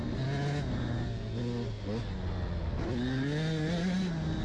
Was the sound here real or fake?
real